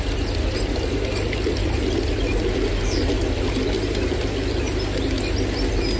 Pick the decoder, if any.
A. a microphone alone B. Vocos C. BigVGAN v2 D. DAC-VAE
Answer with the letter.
A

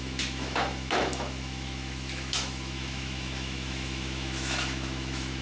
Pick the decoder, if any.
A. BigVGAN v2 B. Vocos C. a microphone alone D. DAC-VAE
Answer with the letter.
D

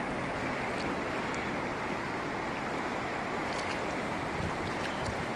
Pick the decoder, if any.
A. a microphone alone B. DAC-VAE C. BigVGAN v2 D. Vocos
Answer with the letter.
A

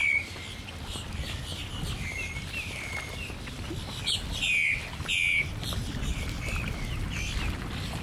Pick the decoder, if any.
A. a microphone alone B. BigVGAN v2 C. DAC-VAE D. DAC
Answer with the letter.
A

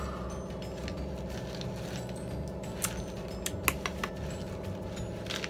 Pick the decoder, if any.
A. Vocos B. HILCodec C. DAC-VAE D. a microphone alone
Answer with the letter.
D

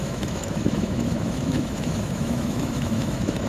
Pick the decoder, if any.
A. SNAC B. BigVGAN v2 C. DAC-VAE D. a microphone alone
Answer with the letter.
C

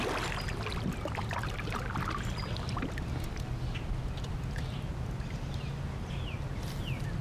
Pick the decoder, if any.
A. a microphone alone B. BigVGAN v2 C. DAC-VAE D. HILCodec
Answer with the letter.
A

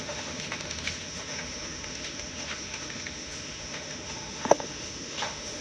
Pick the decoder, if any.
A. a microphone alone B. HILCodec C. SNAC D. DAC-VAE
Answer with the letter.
D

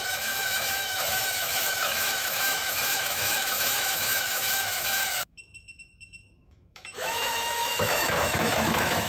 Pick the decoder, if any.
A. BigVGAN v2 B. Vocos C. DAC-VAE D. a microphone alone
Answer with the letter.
C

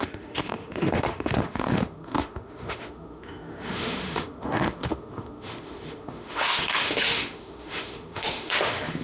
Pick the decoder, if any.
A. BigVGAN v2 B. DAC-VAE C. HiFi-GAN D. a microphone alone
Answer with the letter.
B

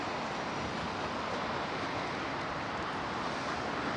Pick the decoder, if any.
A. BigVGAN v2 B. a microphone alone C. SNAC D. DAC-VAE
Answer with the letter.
B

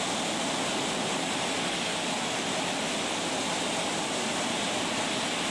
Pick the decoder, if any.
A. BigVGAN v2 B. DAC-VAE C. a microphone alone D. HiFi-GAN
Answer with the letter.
C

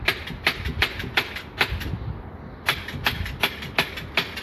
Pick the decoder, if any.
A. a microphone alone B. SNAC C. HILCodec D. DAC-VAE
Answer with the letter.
A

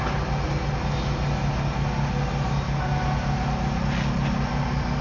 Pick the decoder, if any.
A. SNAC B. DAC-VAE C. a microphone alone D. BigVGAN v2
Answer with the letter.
C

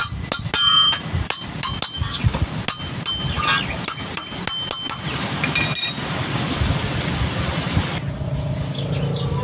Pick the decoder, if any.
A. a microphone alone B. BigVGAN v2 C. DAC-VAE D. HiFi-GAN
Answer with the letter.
A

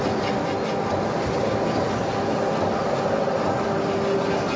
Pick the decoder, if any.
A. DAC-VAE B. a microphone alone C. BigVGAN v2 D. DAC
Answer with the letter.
B